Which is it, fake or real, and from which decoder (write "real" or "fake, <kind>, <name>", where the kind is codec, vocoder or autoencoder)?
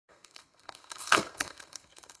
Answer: fake, codec, SNAC